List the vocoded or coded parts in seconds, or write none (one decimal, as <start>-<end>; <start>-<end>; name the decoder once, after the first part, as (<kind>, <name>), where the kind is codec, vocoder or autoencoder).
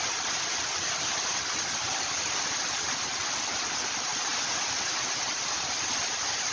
4.3-5.7 (vocoder, BigVGAN v2)